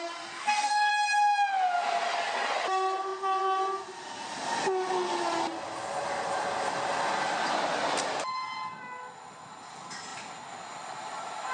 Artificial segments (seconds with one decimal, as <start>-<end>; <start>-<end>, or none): 0.4-0.9